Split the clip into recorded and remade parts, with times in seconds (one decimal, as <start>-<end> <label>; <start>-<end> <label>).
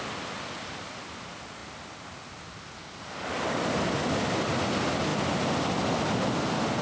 0.0-6.8 recorded